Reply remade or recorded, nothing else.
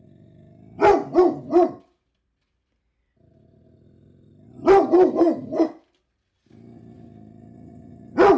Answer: recorded